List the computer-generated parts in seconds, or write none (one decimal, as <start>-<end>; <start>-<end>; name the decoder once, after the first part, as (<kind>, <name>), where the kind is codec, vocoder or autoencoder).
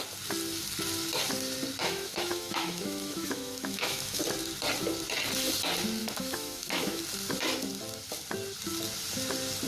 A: 1.8-4.2 (autoencoder, DAC-VAE); 6.0-7.0